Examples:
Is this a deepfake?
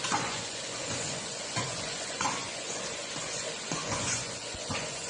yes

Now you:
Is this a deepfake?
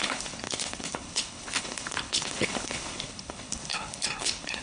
yes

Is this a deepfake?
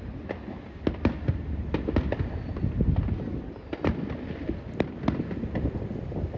no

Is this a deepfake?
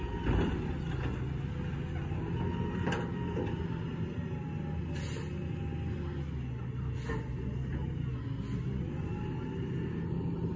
no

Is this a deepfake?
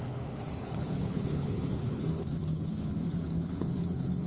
yes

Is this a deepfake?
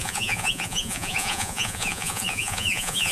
yes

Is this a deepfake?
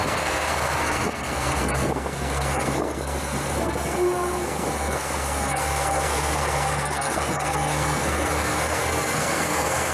yes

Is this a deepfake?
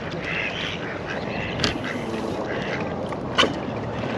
yes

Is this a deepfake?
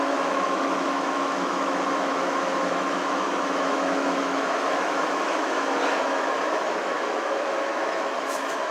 yes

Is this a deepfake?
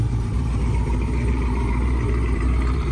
yes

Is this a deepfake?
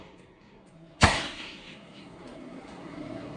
yes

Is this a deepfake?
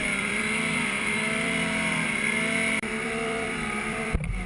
yes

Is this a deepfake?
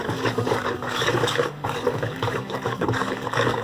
yes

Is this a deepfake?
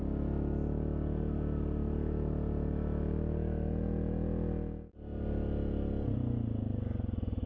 no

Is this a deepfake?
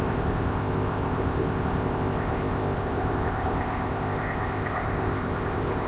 yes